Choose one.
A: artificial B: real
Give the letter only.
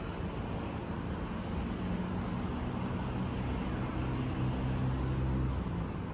B